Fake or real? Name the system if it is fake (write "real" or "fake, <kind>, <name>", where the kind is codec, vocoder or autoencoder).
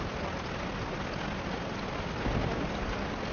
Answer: real